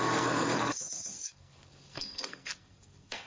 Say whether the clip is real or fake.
fake